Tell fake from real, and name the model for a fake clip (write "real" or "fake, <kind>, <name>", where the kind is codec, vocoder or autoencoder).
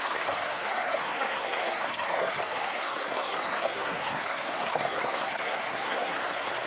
fake, codec, SNAC